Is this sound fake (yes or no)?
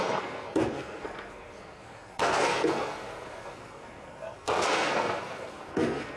yes